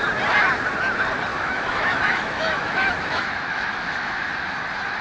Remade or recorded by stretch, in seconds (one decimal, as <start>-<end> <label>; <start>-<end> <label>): 0.0-1.3 recorded; 1.3-4.3 remade; 4.3-5.0 recorded